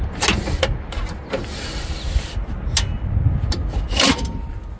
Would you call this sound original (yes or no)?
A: yes